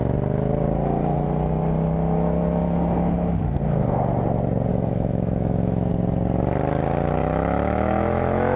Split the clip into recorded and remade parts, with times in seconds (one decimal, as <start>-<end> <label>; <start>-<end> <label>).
0.0-4.7 recorded; 4.7-5.9 remade; 5.9-7.2 recorded; 7.2-8.6 remade